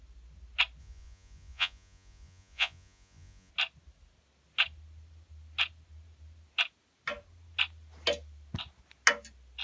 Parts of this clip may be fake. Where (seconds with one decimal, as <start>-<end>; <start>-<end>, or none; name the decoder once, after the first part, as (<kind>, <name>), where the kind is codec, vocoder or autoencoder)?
0.8-3.5 (vocoder, Vocos)

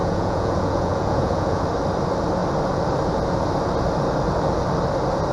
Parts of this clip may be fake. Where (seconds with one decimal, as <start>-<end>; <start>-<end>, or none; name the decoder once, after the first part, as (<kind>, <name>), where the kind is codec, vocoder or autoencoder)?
0.0-1.6 (vocoder, Vocos)

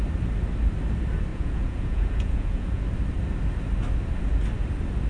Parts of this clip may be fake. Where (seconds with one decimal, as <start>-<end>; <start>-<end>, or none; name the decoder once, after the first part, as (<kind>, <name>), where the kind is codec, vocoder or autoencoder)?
1.3-2.8 (vocoder, Vocos)